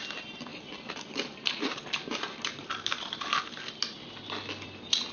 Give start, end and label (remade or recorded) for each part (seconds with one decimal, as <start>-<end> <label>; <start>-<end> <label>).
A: 0.0-0.5 recorded; 0.5-3.6 remade; 3.6-5.1 recorded